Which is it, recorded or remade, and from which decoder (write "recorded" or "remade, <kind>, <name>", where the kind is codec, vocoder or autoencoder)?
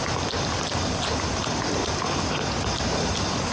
recorded